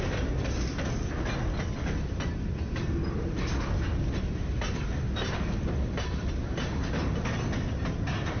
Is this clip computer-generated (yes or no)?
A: no